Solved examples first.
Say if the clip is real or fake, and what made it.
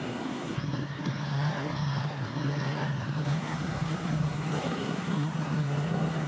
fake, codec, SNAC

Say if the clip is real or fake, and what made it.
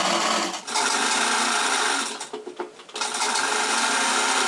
real